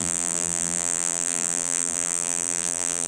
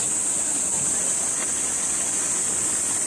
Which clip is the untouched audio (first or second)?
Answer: second